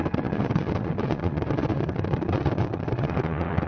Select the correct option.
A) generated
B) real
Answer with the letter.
A